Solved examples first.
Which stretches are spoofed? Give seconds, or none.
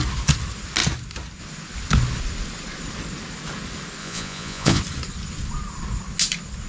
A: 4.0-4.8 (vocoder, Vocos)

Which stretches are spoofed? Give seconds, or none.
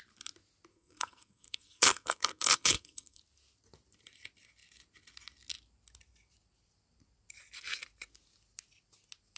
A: 0.7-3.2 (codec, SNAC)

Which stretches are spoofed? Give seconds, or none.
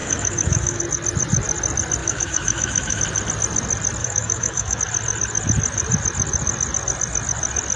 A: 0.0-0.8 (autoencoder, DAC-VAE); 2.0-3.0; 4.0-4.8